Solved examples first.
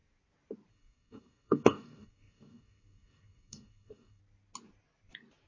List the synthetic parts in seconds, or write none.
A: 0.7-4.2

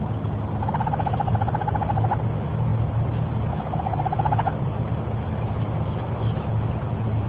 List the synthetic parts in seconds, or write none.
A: none

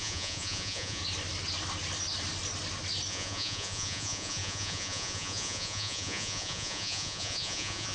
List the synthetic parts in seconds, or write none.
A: 0.0-1.0; 3.1-7.9

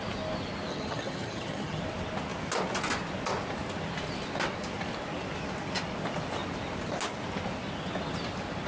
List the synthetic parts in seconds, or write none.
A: 0.7-1.8